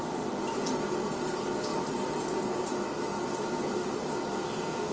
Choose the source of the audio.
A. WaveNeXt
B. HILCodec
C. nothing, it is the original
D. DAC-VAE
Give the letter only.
C